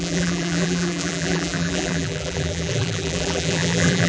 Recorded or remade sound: remade